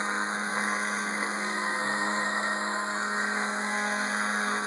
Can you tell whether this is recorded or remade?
remade